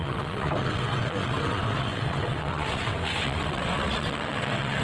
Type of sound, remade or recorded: remade